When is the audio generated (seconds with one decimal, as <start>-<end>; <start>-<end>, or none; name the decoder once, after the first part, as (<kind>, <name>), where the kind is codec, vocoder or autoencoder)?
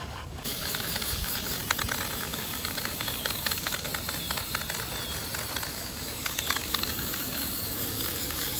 0.0-1.6 (codec, DAC); 2.2-3.9; 5.7-8.6